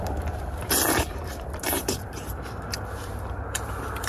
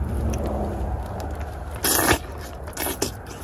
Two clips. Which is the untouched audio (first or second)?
second